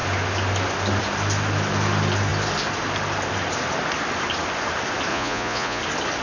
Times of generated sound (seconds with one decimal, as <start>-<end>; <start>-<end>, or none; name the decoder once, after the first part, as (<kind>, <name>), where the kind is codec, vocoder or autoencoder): 5.1-5.8 (vocoder, Vocos)